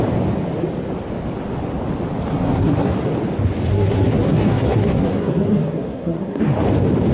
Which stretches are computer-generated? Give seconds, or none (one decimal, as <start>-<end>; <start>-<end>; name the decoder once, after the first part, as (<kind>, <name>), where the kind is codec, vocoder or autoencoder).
2.3-2.9 (codec, SNAC); 3.7-6.4

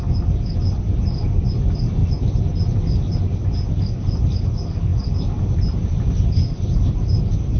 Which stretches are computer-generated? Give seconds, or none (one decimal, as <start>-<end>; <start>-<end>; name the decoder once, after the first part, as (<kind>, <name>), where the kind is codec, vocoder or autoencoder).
none